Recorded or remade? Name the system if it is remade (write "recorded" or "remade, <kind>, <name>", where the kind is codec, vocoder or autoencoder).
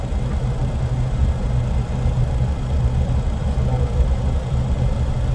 recorded